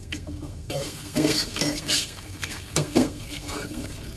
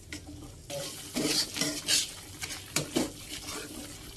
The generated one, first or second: first